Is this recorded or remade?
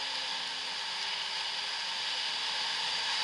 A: recorded